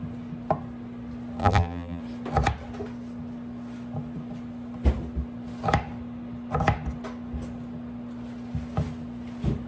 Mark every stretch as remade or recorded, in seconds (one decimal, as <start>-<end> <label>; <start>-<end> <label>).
0.0-1.4 recorded; 1.4-2.0 remade; 2.0-9.7 recorded